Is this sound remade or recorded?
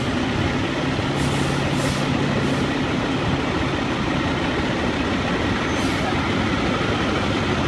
recorded